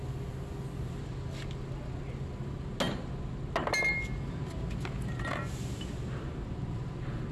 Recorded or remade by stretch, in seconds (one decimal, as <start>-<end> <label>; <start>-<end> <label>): 0.0-7.3 recorded